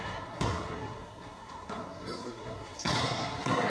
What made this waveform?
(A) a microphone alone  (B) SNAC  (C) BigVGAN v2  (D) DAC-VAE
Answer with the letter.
B